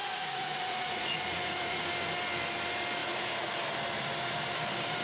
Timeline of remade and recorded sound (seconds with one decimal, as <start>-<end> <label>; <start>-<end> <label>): 0.0-1.8 remade; 1.8-3.0 recorded; 3.0-3.5 remade; 3.5-5.0 recorded